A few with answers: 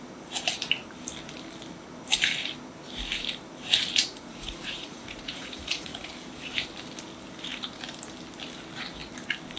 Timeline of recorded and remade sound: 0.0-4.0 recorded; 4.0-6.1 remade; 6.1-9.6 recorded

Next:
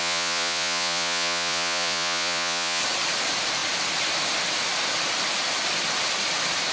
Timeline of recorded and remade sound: 0.0-2.8 remade; 2.8-6.7 recorded